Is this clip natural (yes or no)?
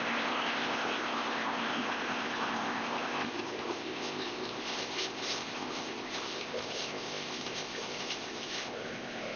no